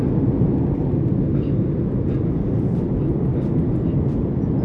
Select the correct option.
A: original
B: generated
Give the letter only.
A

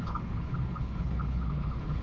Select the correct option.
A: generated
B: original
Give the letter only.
A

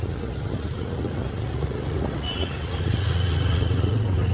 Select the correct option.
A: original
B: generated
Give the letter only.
B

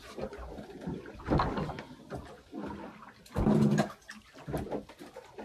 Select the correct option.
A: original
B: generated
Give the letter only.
A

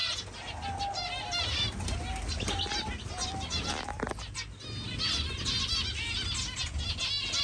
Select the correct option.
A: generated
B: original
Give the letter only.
B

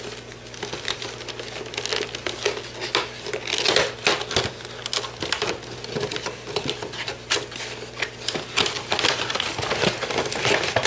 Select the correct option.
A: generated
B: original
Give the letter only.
B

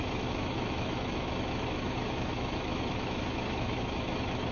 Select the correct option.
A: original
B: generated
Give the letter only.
B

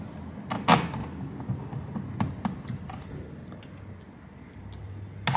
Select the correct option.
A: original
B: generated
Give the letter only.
A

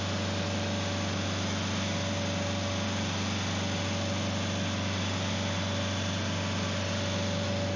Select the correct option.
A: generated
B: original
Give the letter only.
B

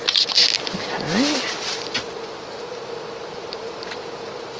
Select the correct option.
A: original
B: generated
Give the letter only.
A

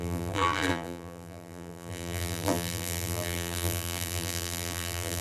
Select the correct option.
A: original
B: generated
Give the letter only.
B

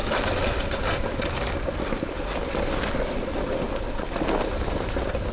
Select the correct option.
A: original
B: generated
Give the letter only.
A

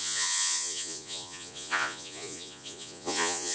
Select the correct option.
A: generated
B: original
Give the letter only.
A